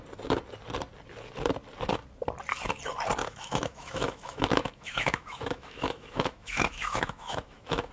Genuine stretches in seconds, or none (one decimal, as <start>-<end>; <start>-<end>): 0.0-3.2